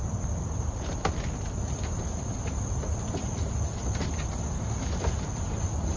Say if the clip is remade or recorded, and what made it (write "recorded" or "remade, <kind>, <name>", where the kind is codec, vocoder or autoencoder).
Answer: recorded